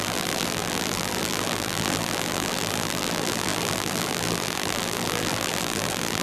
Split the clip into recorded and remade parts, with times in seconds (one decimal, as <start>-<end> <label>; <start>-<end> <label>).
0.0-6.2 remade